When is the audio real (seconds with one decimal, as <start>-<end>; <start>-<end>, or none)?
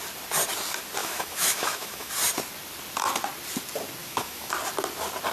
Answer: 0.0-1.0; 2.1-4.0; 4.5-5.3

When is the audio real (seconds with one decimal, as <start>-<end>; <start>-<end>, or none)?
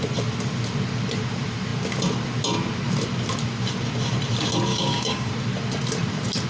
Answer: 0.0-4.7; 5.3-6.5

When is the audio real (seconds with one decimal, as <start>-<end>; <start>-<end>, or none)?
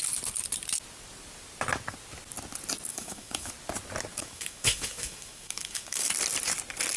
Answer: 0.0-2.9; 3.5-4.2; 6.1-7.0